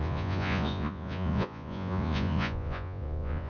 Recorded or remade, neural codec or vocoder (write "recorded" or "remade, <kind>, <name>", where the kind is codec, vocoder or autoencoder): remade, vocoder, Vocos